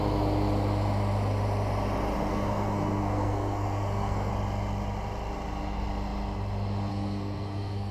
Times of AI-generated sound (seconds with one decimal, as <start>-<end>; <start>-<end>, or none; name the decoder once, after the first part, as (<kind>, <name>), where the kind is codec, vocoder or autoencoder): 2.3-4.3 (codec, SNAC); 6.9-7.9